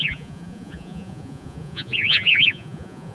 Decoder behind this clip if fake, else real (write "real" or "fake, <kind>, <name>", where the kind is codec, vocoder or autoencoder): fake, vocoder, Vocos